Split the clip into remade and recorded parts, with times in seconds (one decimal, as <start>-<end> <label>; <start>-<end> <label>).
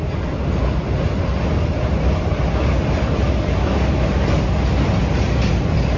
0.0-6.0 recorded